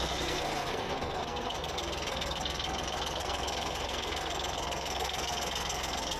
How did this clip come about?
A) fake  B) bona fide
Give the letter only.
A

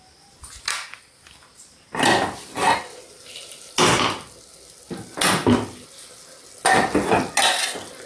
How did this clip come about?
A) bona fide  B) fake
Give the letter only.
A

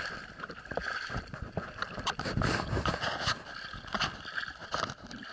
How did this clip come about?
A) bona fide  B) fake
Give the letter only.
A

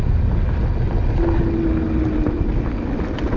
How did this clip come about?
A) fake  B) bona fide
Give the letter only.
B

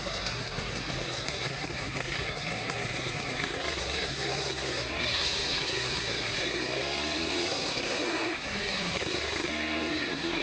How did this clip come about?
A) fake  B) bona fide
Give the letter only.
A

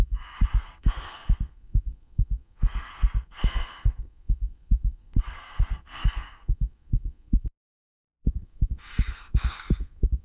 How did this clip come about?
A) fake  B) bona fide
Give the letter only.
A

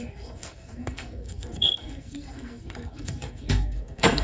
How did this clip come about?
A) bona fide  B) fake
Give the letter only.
B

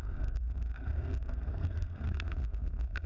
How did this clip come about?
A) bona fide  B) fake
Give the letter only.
B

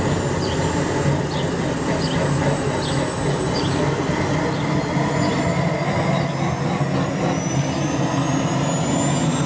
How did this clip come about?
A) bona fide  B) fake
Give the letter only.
A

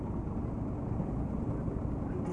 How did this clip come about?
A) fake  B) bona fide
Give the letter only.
B